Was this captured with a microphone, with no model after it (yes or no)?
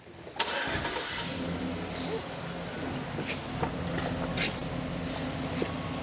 yes